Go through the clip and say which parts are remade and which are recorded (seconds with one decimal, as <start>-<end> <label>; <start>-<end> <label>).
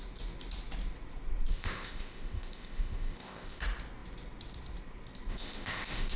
0.0-1.5 recorded; 1.5-3.6 remade; 3.6-5.3 recorded; 5.3-6.2 remade